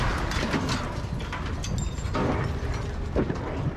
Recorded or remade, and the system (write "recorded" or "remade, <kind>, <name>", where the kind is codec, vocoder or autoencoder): recorded